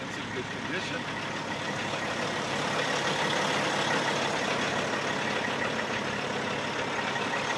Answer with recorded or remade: recorded